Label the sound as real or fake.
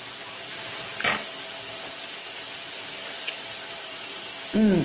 real